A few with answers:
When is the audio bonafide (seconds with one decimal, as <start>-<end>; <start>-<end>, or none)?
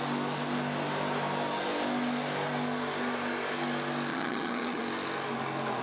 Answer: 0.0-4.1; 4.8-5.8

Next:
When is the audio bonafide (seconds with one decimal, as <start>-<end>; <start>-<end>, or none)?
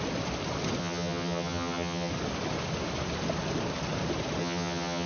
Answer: 0.0-0.8; 2.1-4.4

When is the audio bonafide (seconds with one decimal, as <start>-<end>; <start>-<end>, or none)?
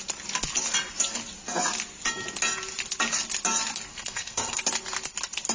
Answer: 0.0-3.9; 4.6-5.5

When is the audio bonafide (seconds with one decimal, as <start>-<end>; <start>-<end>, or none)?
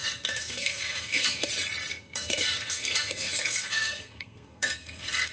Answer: 1.5-1.9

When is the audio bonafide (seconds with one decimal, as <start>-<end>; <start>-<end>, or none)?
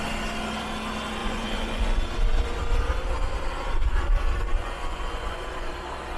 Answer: 0.0-1.2; 2.0-4.6; 5.7-6.2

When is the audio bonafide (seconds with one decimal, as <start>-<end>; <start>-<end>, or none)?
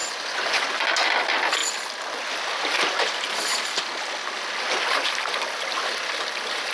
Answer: 0.7-6.7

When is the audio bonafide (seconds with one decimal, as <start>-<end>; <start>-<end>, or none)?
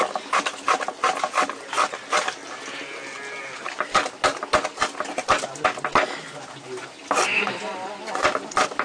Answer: 0.0-8.8